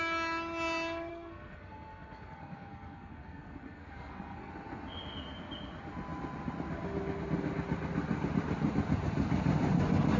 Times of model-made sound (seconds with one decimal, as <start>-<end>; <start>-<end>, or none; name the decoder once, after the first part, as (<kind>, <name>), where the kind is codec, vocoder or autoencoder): 1.1-4.5 (codec, SNAC)